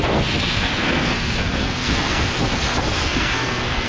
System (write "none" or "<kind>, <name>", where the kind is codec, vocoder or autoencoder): codec, SNAC